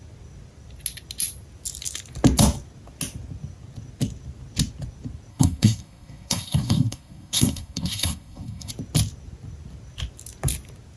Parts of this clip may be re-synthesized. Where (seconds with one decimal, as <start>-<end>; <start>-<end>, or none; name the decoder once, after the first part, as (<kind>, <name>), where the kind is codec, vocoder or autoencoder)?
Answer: 5.3-8.7 (codec, SNAC)